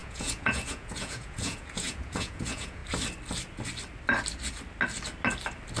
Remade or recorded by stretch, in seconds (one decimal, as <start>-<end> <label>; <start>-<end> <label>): 0.0-2.8 remade; 2.8-5.8 recorded